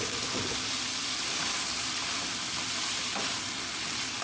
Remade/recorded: recorded